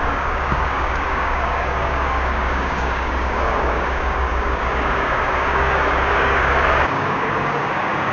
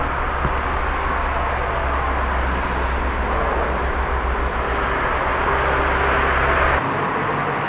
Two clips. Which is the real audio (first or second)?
second